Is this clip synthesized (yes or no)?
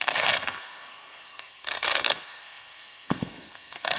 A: yes